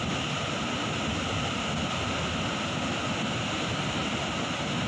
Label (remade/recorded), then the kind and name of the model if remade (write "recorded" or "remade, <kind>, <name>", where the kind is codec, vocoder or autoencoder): recorded